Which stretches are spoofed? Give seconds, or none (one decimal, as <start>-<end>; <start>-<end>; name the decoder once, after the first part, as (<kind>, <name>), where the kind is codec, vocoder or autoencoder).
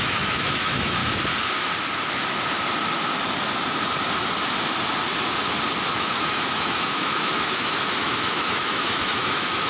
0.0-1.0 (autoencoder, DAC-VAE); 5.8-9.7